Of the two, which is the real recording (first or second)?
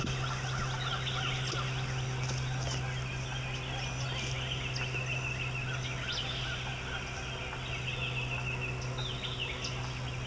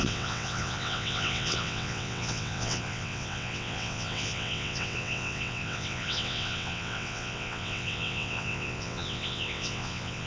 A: first